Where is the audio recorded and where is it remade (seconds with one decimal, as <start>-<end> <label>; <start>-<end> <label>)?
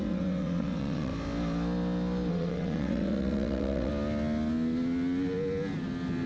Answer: 0.0-1.1 remade; 1.1-2.3 recorded; 2.3-3.9 remade; 3.9-6.3 recorded